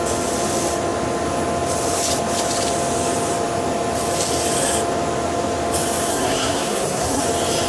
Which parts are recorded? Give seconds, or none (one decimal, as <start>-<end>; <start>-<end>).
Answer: 0.0-6.1; 7.2-7.7